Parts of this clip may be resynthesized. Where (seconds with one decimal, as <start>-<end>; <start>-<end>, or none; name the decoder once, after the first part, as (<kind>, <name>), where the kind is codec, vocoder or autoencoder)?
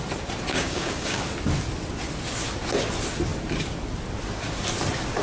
0.5-1.2 (codec, DAC)